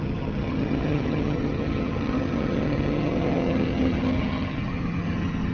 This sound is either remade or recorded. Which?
remade